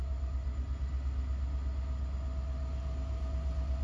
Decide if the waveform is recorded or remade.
recorded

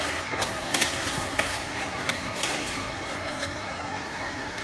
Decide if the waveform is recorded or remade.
remade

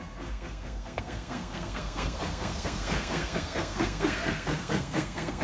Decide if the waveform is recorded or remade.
remade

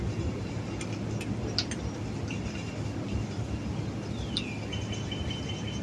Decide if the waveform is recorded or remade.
recorded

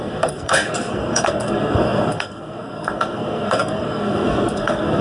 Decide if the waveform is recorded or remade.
remade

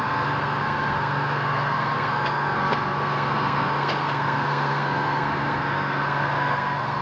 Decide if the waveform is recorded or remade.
remade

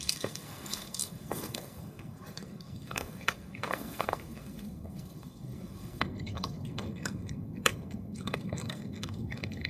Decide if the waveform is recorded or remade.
remade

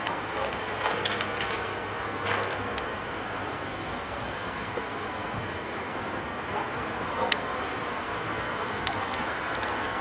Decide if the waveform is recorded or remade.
remade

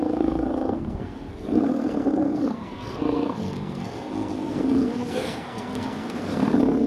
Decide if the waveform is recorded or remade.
remade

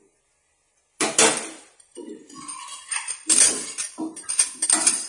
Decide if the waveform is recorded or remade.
recorded